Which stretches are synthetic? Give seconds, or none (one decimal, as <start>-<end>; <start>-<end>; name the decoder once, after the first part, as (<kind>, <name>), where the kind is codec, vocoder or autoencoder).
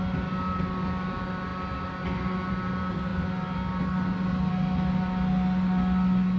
none